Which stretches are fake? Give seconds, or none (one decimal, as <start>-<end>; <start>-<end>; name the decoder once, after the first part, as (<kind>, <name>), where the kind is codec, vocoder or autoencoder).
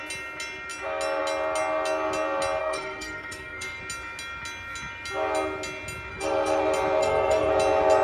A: 2.6-3.8 (codec, SNAC); 6.1-6.6; 7.0-7.5